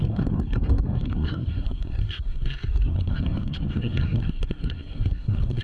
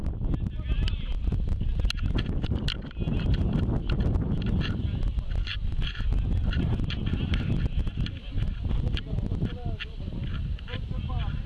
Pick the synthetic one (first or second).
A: first